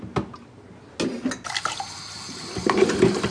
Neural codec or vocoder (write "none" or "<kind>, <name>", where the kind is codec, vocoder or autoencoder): none